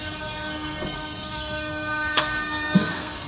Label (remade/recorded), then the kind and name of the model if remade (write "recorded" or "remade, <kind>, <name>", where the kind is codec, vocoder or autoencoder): remade, codec, SNAC